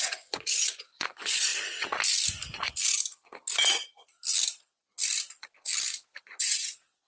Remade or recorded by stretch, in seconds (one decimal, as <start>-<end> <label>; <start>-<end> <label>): 0.0-1.5 remade; 1.5-5.3 recorded; 5.3-5.7 remade; 5.7-6.4 recorded; 6.4-7.1 remade